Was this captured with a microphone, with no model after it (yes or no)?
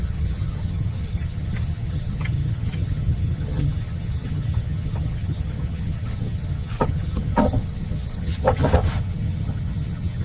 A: no